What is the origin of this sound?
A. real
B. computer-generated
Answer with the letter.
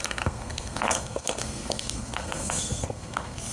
B